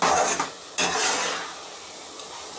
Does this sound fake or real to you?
real